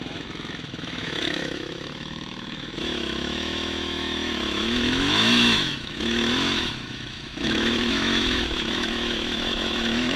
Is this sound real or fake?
fake